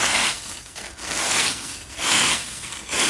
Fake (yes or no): yes